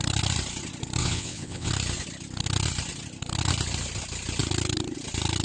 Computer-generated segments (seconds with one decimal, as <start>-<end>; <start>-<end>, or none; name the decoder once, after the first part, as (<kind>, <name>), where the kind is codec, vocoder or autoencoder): 1.0-1.7 (vocoder, WaveNeXt)